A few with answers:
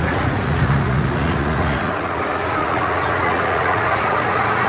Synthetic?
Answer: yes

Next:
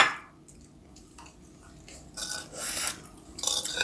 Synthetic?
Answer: no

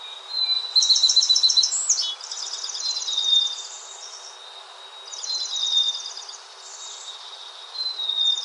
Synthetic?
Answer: no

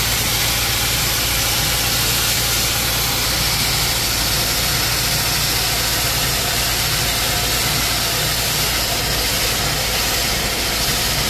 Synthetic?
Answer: no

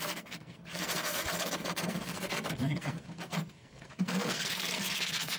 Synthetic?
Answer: yes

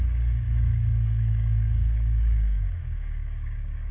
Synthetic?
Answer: yes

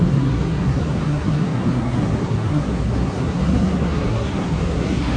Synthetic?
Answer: yes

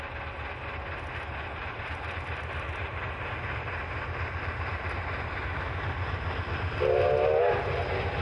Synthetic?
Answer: no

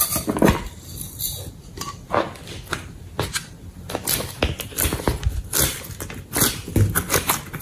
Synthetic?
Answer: no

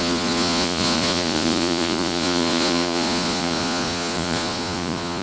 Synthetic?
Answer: yes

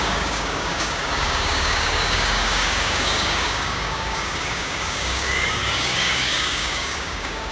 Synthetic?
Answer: yes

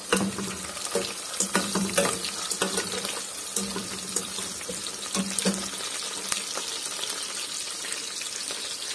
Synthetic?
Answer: no